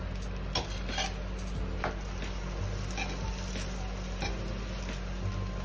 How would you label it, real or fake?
real